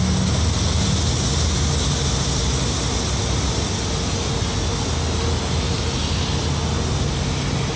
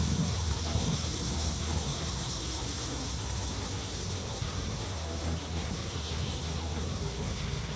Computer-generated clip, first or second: second